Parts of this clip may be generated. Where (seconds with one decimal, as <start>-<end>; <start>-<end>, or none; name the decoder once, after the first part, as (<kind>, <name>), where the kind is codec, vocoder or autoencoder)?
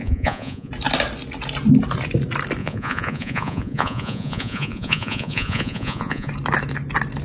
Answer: 0.0-0.7 (vocoder, Vocos); 2.6-6.3